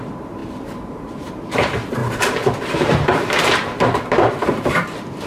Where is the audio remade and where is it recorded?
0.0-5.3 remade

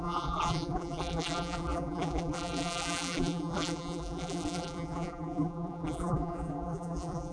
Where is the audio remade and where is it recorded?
0.0-7.3 remade

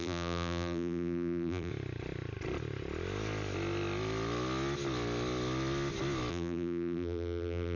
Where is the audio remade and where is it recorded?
0.0-1.7 remade; 1.7-6.3 recorded; 6.3-7.8 remade

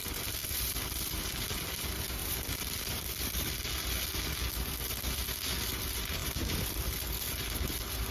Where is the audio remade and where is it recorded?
0.0-0.4 recorded; 0.4-1.1 remade; 1.1-2.2 recorded; 2.2-3.5 remade; 3.5-6.2 recorded; 6.2-6.7 remade; 6.7-8.1 recorded

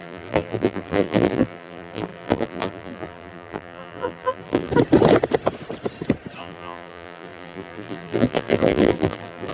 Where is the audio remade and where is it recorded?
0.0-4.7 remade; 4.7-6.4 recorded; 6.4-9.5 remade

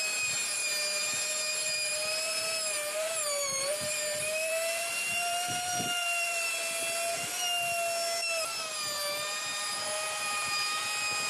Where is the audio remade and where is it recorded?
0.0-6.6 remade; 6.6-9.4 recorded; 9.4-11.3 remade

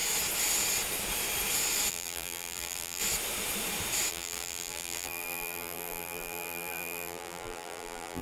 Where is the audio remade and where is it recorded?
0.0-1.9 recorded; 1.9-3.0 remade; 3.0-4.1 recorded; 4.1-8.2 remade

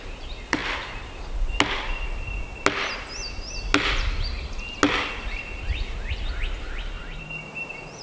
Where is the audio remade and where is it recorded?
0.0-0.6 remade; 0.6-3.9 recorded; 3.9-4.8 remade; 4.8-7.0 recorded; 7.0-8.0 remade